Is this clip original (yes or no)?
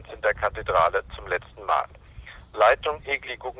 yes